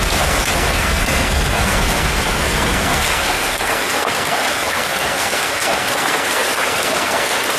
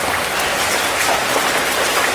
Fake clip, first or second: first